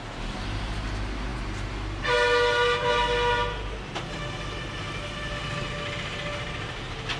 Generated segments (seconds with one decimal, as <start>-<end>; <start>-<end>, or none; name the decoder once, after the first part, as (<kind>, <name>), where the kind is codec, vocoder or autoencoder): none